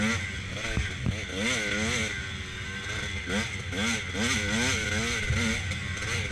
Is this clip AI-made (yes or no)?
no